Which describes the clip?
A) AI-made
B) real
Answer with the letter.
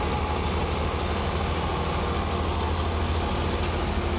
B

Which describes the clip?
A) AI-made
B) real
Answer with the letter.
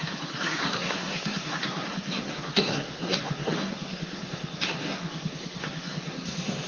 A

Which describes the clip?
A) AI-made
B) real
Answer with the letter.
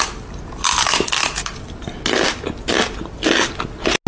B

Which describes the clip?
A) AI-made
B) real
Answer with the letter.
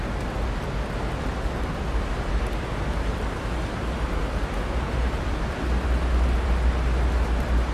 B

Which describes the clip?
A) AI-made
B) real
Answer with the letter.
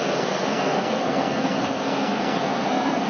A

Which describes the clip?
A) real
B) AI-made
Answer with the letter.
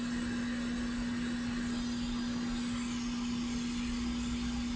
A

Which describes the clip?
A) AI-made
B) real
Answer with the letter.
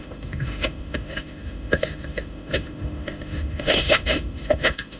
A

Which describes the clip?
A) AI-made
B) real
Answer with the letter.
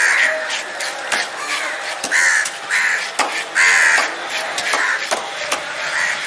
B